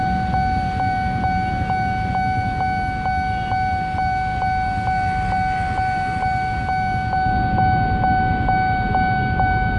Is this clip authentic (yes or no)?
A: yes